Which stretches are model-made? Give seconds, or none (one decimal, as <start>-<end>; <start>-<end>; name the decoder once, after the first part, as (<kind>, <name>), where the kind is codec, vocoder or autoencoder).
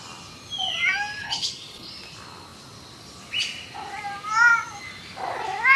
1.2-1.9 (codec, HILCodec)